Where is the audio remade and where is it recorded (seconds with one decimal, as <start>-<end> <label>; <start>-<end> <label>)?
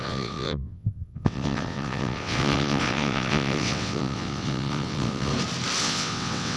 0.0-5.3 remade; 5.3-5.8 recorded; 5.8-6.6 remade